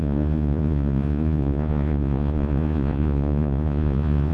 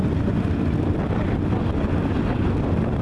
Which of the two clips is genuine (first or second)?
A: second